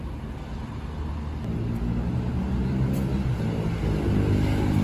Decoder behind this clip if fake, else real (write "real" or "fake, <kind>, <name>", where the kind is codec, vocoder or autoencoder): real